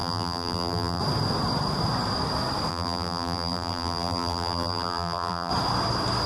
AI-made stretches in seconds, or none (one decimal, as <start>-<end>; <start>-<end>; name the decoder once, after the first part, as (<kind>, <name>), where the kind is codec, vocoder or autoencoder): 0.0-1.0 (vocoder, BigVGAN v2); 2.7-5.5